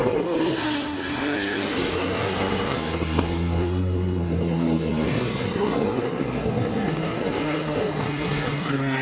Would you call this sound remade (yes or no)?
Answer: yes